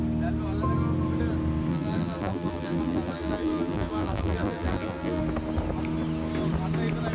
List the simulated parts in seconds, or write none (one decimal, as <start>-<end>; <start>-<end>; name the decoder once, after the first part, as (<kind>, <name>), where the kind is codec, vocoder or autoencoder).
1.7-5.2 (vocoder, BigVGAN v2)